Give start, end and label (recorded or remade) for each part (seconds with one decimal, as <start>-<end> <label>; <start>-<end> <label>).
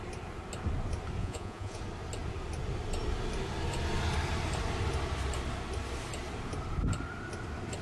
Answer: 0.0-1.2 recorded; 1.2-1.8 remade; 1.8-7.8 recorded